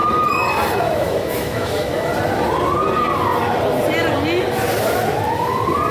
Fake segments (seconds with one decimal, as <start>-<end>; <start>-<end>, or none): 0.8-2.1

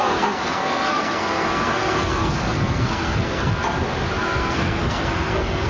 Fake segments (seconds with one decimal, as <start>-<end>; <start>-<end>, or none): 0.0-3.5; 4.2-5.7

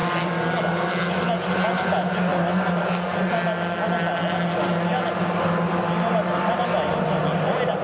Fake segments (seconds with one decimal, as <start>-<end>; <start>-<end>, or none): 2.3-3.3

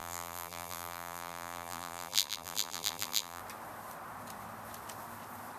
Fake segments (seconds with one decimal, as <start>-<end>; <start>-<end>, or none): 0.0-3.4